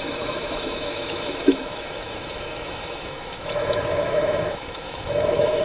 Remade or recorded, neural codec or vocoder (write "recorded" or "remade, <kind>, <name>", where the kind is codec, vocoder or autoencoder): remade, autoencoder, DAC-VAE